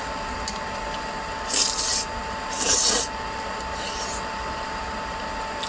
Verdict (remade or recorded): recorded